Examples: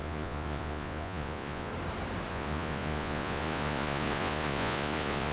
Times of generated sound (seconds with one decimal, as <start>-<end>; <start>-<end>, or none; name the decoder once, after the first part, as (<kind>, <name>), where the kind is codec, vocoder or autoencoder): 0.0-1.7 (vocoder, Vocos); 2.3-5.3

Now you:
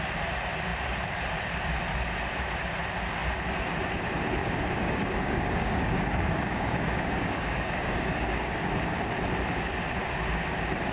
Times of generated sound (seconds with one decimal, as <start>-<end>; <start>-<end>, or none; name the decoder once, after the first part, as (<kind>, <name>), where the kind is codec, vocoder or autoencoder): 4.4-8.7 (codec, DAC)

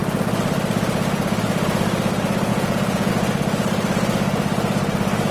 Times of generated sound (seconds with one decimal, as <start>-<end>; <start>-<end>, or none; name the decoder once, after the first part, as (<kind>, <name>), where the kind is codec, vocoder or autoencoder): 2.5-3.1 (vocoder, Vocos)

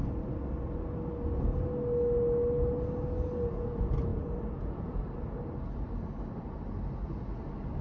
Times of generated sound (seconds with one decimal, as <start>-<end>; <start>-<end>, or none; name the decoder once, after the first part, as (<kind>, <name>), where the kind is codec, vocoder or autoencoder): 4.1-5.0 (vocoder, Vocos)